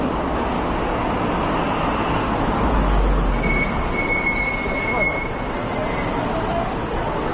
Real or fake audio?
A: real